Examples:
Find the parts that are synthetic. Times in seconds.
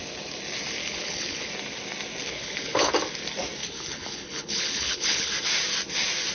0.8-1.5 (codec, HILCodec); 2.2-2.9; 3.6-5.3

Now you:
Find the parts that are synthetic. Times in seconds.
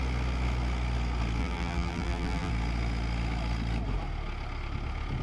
1.4-2.5 (vocoder, BigVGAN v2)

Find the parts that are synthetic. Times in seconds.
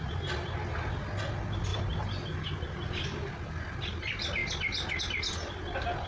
none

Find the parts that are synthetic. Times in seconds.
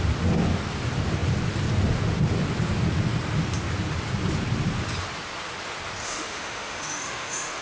6.0-7.6 (autoencoder, DAC-VAE)